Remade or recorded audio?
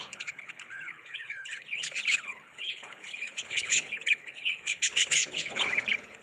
remade